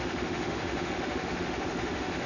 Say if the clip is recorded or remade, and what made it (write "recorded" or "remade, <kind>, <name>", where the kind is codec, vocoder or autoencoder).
remade, autoencoder, DAC-VAE